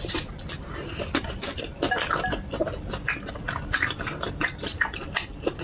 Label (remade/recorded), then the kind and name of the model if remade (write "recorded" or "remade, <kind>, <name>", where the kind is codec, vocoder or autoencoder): recorded